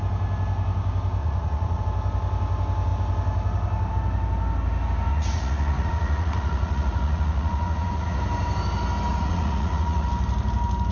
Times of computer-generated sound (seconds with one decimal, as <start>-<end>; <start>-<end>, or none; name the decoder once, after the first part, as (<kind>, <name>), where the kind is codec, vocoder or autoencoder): 1.2-1.8 (vocoder, Vocos); 5.1-8.2; 9.1-10.1